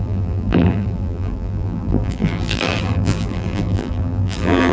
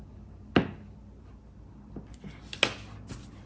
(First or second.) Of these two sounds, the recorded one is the second